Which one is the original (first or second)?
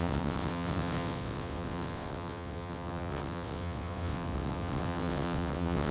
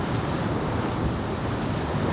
second